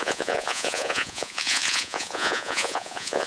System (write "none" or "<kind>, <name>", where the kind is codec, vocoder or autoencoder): vocoder, Vocos